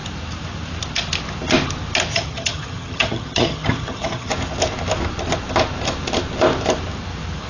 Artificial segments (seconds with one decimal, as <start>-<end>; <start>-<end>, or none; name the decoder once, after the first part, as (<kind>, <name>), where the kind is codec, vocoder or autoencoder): 2.1-4.3 (vocoder, HiFi-GAN)